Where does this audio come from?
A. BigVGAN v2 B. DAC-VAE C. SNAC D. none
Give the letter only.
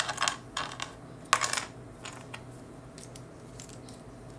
D